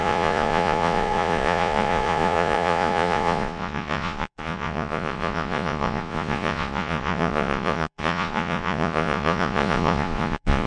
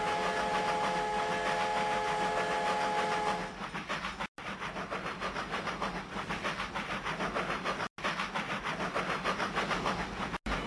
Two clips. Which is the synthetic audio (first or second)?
first